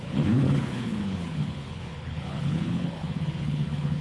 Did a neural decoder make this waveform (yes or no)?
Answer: yes